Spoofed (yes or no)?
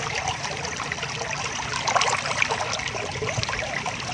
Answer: no